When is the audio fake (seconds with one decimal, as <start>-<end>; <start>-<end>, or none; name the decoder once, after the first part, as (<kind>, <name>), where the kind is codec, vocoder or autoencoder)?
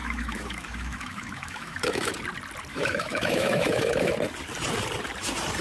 0.0-2.1 (autoencoder, DAC-VAE); 2.7-4.1